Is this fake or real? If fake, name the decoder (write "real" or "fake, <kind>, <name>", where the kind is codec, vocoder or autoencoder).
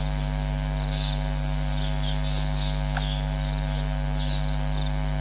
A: real